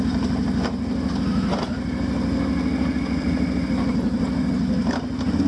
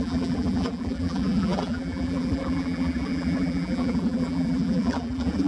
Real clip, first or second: first